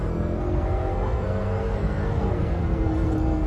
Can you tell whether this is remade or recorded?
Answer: remade